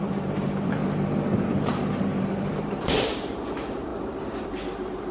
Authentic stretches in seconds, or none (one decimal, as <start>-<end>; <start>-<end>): 0.8-1.5; 3.9-5.1